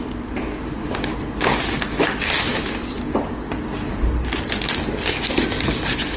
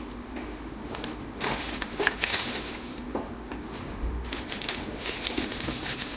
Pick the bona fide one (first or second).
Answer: first